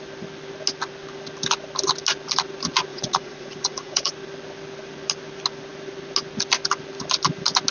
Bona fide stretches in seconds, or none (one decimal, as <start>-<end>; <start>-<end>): 0.0-2.9; 4.1-7.7